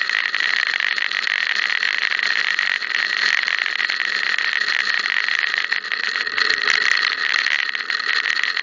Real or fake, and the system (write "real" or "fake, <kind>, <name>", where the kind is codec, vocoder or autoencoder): real